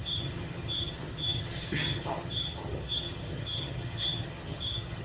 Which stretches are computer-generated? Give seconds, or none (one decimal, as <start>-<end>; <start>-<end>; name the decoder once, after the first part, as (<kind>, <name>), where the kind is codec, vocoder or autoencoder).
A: 0.0-5.0 (vocoder, HiFi-GAN)